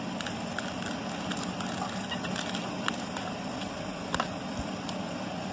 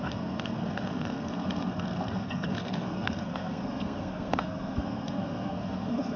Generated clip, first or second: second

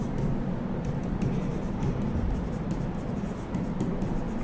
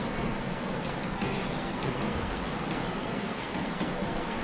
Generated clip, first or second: second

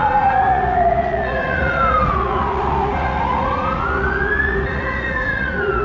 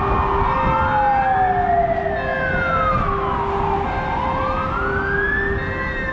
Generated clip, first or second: first